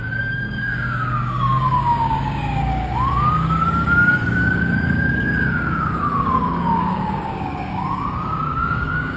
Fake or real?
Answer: fake